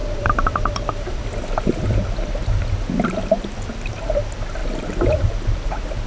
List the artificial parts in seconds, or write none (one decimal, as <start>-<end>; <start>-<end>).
0.0-2.8; 4.6-5.3